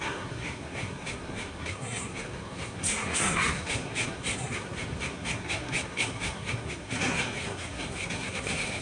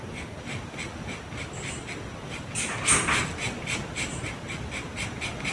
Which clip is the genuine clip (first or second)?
second